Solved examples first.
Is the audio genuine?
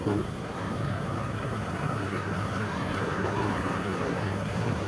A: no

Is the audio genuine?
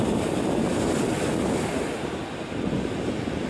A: yes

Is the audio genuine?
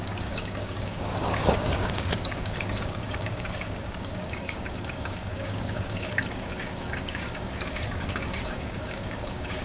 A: no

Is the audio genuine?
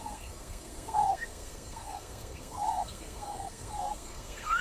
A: no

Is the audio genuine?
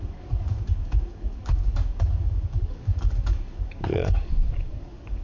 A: no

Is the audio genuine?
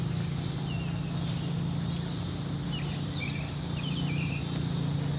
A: yes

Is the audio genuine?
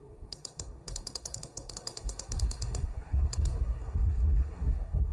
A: no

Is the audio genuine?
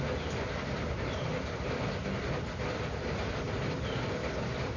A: yes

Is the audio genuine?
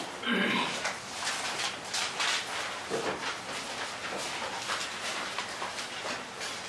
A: yes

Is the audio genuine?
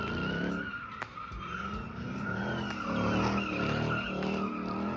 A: yes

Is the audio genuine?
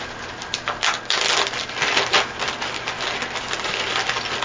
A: yes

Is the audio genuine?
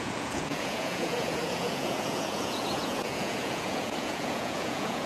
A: no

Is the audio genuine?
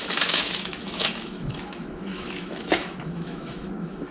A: no